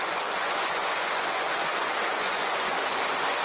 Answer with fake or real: fake